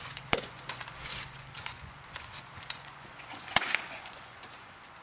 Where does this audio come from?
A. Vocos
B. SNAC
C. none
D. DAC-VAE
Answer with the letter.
A